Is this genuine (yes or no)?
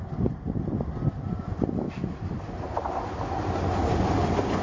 yes